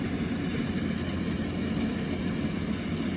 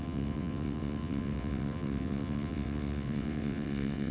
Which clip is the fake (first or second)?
second